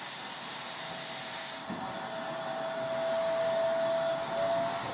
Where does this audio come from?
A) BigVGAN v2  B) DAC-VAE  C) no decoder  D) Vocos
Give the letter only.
C